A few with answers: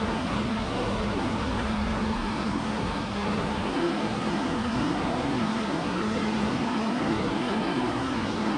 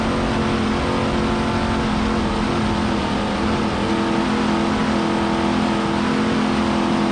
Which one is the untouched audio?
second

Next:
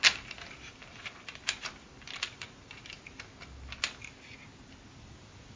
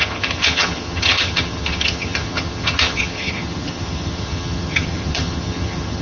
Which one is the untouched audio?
first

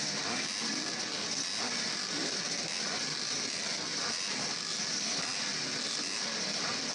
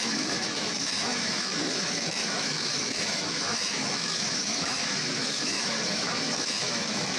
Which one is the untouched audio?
first